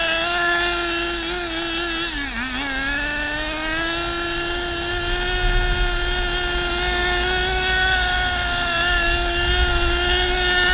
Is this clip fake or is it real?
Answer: real